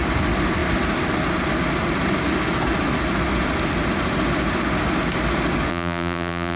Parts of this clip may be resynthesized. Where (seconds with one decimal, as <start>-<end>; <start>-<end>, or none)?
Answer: 5.7-6.6